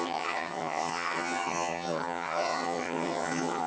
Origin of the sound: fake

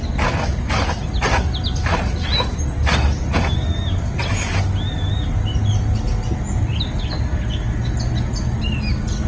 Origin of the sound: real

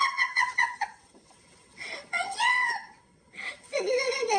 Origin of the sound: fake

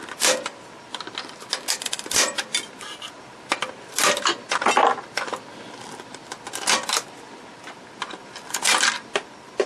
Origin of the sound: real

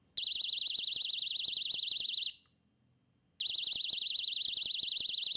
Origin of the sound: real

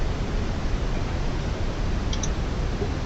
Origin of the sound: real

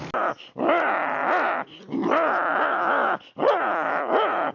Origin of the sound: real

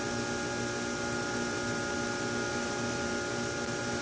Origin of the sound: real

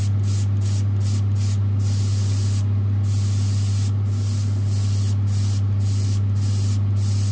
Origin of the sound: real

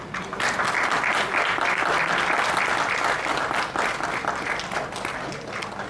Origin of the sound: real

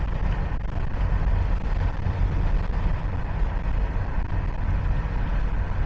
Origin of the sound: real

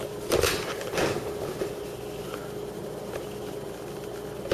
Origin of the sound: real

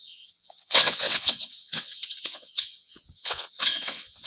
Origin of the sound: fake